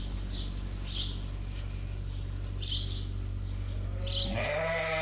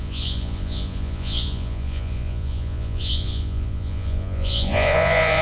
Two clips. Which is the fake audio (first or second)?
second